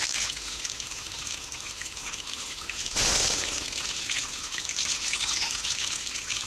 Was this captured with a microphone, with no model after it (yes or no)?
no